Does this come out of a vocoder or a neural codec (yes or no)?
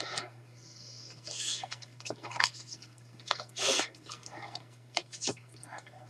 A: yes